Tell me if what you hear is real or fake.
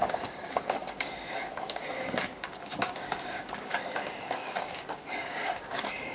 fake